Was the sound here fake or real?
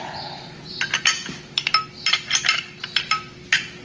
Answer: real